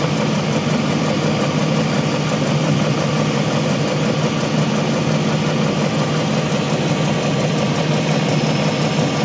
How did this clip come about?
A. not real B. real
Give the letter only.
B